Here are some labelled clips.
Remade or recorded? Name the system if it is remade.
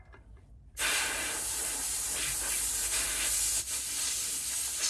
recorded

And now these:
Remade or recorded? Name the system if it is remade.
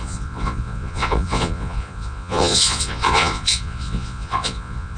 remade, vocoder, Vocos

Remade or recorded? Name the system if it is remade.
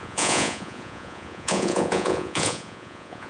remade, vocoder, Vocos